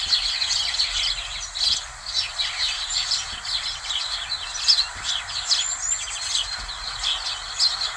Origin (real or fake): real